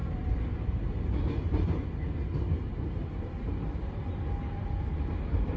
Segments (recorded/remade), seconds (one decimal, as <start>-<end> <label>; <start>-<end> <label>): 0.0-1.0 remade; 1.0-2.7 recorded; 2.7-4.2 remade; 4.2-5.6 recorded